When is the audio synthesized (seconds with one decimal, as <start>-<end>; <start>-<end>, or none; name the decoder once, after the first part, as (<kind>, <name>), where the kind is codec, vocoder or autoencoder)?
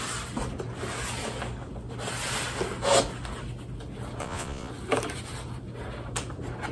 4.2-4.7 (vocoder, Vocos)